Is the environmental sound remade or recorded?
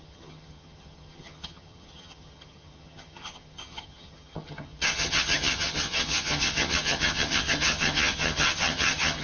remade